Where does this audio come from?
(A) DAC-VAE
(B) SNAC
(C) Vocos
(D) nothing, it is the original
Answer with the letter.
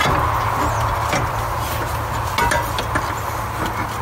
D